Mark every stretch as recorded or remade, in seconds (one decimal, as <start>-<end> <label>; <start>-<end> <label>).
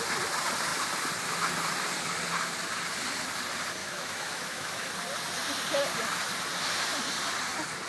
0.0-3.8 recorded; 3.8-4.9 remade; 4.9-7.9 recorded